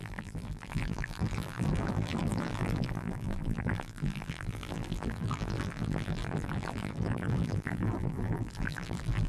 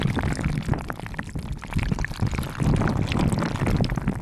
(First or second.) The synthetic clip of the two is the first